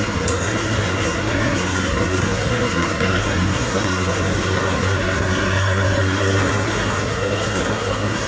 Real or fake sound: fake